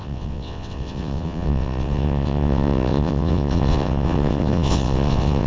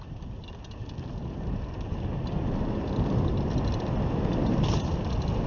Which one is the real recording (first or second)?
second